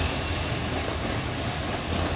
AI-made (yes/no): no